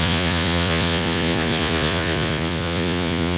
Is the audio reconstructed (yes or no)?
yes